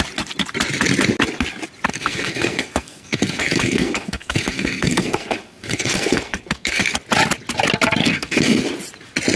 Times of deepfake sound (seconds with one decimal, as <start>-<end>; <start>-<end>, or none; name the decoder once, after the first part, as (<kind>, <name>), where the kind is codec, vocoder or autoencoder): 1.9-6.8 (codec, SNAC); 8.0-8.6